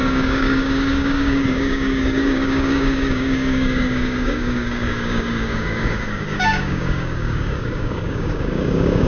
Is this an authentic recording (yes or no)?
no